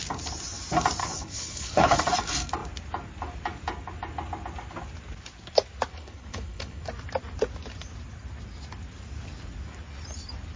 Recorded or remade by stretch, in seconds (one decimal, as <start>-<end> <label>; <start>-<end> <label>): 0.0-1.0 recorded; 1.0-2.0 remade; 2.0-5.9 recorded; 5.9-6.8 remade; 6.8-10.6 recorded